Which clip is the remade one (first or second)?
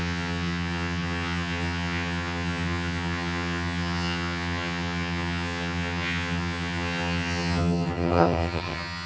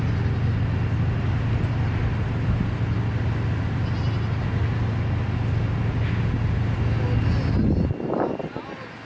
first